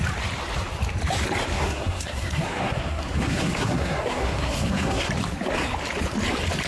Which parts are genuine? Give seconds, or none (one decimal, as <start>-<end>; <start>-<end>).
0.0-1.5; 5.1-6.7

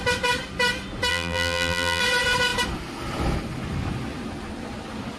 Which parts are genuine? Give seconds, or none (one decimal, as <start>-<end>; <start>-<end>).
0.0-1.1; 2.0-5.2

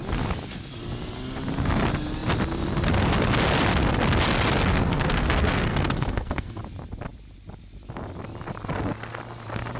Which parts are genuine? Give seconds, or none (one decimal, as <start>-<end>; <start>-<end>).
0.0-4.7; 6.6-9.8

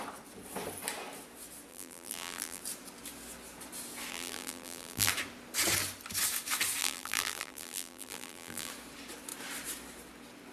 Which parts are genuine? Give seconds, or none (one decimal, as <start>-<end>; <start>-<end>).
0.0-1.7; 2.6-4.1; 5.1-6.8; 8.7-10.5

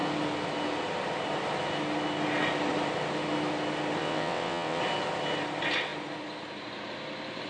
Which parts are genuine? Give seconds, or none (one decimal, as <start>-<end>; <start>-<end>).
0.0-4.0; 4.8-7.5

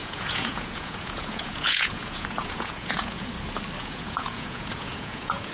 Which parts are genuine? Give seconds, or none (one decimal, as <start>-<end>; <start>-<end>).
3.3-3.8

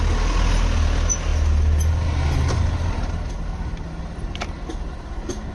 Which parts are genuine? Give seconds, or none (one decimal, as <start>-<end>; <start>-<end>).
0.0-5.5